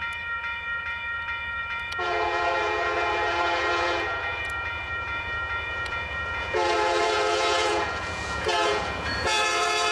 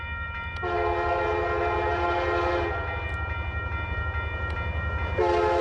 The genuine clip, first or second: second